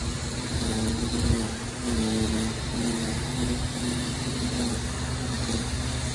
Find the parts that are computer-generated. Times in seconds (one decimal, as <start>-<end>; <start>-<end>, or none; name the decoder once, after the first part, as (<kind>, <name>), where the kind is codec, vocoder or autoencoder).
none